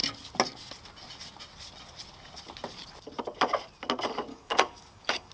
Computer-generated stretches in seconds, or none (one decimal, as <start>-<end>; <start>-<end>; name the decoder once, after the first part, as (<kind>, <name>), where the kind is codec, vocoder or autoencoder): 4.3-5.3 (codec, DAC)